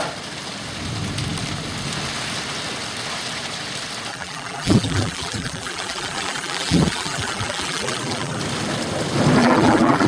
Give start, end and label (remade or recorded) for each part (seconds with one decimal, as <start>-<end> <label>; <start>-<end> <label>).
0.0-4.1 recorded; 4.1-8.4 remade; 8.4-9.4 recorded; 9.4-10.1 remade